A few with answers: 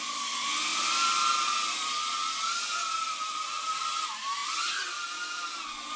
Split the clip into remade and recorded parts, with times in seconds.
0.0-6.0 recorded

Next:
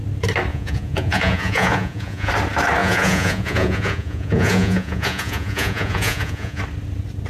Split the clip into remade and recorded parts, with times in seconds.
0.0-0.5 recorded; 0.5-2.3 remade; 2.3-2.8 recorded; 2.8-6.6 remade; 6.6-7.3 recorded

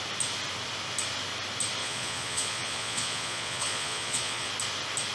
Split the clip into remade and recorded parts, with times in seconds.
0.0-1.8 recorded; 1.8-4.5 remade; 4.5-5.1 recorded

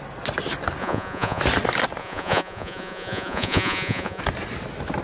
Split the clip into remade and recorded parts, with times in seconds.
0.0-0.8 recorded; 0.8-1.4 remade; 1.4-2.0 recorded; 2.0-4.2 remade; 4.2-5.0 recorded